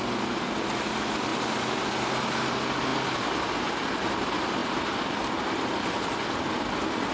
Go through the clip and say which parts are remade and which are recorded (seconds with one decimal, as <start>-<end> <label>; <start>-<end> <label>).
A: 0.0-7.1 recorded